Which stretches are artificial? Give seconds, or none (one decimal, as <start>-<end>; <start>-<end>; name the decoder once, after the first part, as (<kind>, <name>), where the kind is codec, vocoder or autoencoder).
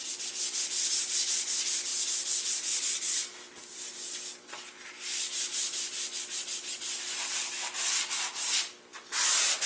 none